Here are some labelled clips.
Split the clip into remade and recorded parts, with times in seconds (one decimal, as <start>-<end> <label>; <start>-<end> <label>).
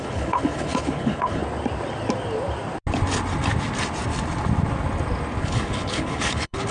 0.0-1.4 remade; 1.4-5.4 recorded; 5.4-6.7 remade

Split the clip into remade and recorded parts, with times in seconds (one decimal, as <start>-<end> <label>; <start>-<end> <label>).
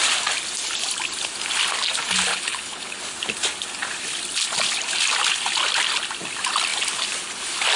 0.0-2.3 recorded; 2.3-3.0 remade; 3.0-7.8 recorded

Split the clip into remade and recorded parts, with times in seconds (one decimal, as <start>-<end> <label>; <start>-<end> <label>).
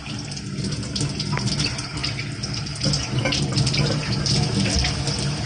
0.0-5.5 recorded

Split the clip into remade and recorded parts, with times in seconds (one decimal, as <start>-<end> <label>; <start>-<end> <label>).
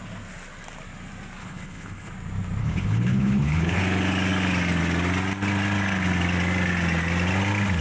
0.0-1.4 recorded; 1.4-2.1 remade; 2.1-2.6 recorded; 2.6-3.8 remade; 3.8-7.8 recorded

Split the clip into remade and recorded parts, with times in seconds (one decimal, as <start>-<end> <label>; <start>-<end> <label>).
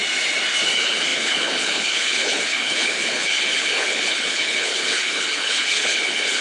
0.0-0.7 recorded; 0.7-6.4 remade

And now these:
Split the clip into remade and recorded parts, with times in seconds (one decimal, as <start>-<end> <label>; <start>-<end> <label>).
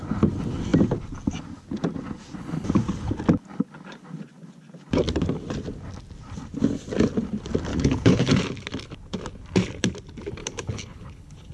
0.0-7.7 recorded; 7.7-8.3 remade; 8.3-10.4 recorded; 10.4-11.5 remade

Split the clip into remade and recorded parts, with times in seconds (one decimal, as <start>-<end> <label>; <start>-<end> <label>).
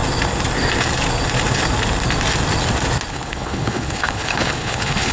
0.0-3.1 recorded; 3.1-5.1 remade